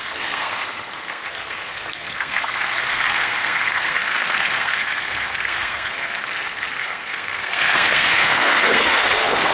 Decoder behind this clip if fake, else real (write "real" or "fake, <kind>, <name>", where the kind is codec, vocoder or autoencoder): fake, codec, SNAC